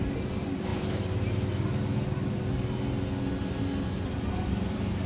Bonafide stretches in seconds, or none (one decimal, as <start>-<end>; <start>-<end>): 0.0-5.1